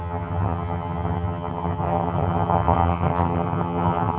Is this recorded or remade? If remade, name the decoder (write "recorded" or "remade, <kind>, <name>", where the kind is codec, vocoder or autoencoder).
remade, vocoder, HiFi-GAN